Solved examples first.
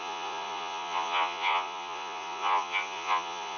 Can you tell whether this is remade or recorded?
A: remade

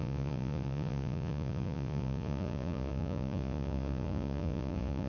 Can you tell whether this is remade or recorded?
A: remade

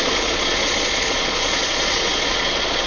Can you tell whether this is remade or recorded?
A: remade